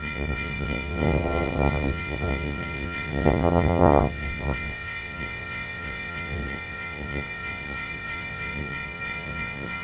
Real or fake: fake